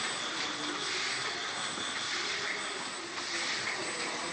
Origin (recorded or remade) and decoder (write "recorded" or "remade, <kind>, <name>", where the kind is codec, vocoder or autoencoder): recorded